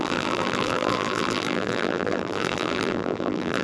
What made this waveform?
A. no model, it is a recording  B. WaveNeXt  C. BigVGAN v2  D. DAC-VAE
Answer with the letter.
C